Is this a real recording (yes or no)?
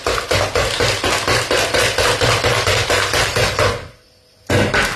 yes